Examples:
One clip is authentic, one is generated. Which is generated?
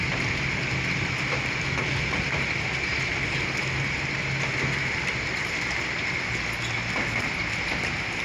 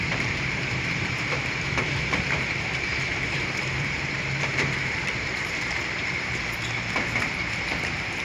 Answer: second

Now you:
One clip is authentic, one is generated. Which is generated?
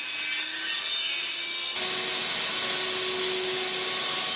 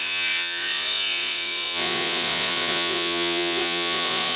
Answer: second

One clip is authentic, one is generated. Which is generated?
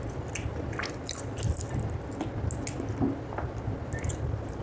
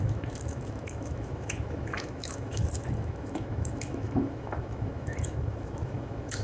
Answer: second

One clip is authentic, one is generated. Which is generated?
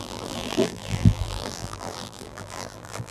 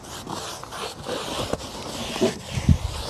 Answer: first